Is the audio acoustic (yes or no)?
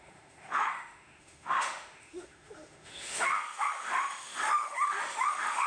no